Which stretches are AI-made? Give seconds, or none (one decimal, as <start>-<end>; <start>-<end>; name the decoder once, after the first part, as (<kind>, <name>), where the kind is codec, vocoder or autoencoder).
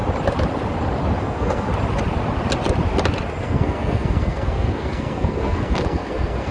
1.2-1.7 (codec, SNAC); 3.4-6.5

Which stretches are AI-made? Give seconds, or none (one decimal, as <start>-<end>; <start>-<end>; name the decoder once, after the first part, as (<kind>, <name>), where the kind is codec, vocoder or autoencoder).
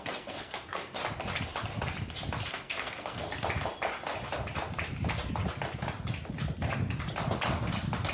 0.0-1.0 (codec, SNAC); 2.5-3.3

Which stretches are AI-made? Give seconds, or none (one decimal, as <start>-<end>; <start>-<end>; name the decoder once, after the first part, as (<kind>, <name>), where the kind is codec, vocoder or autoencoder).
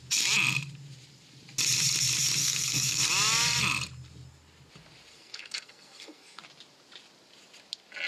2.4-3.0 (codec, SNAC); 5.1-6.4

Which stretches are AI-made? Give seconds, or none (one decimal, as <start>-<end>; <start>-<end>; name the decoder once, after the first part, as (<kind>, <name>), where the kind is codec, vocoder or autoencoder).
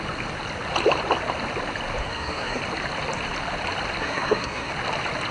2.0-2.6 (codec, SNAC); 4.0-4.7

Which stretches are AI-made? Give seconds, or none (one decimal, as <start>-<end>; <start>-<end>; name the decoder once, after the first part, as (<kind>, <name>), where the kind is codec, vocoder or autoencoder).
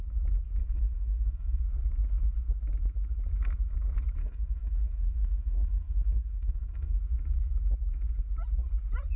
0.6-1.6 (codec, SNAC); 4.2-7.0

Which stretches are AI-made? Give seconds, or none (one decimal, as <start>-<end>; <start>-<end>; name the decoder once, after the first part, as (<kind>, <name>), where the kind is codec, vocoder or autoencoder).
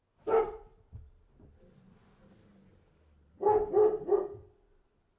none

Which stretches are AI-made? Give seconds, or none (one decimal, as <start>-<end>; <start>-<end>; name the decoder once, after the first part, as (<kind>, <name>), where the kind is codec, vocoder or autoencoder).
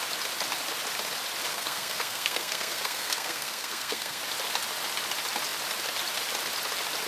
1.5-4.2 (codec, SNAC)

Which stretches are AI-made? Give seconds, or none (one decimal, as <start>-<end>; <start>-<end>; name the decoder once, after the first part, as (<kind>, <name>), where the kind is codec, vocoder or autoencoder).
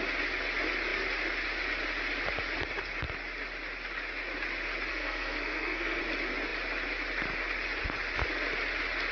4.9-6.0 (codec, SNAC)